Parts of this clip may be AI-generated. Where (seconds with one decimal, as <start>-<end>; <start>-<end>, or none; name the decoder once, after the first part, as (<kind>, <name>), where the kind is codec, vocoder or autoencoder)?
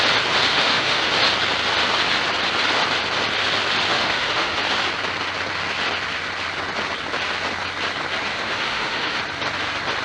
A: 0.5-1.1 (autoencoder, DAC-VAE); 3.9-4.6; 8.3-9.2